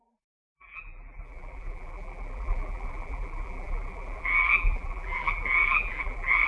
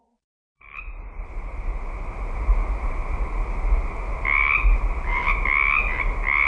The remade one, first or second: first